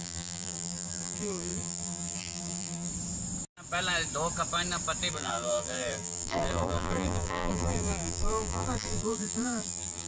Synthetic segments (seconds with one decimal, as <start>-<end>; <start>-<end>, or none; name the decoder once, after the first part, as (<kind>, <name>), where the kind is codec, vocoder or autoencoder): 0.0-2.9 (vocoder, BigVGAN v2); 5.1-10.1